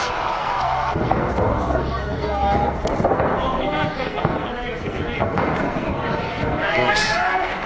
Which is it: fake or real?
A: fake